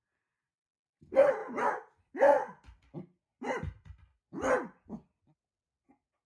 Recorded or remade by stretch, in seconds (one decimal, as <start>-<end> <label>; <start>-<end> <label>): 0.0-6.3 recorded